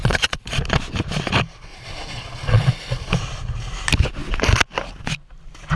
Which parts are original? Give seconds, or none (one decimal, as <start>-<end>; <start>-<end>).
0.6-1.7; 2.7-5.8